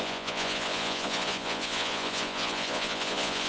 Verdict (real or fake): fake